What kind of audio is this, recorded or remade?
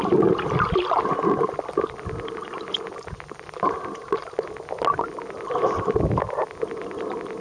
recorded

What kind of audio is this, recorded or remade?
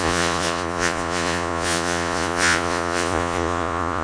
remade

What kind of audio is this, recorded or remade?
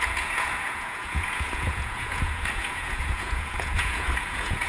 remade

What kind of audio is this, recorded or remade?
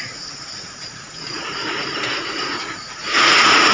remade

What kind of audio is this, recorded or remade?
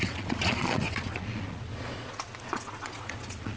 remade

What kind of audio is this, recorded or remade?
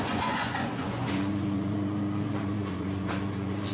remade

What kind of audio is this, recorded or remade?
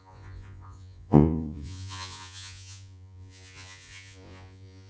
remade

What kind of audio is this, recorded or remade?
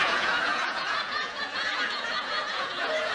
remade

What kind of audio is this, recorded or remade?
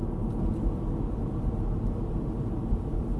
recorded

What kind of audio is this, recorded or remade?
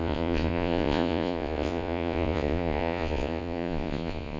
remade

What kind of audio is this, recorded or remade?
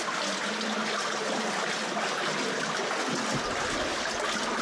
recorded